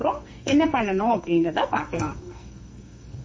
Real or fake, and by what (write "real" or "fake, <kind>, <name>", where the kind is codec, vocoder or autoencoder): fake, codec, SNAC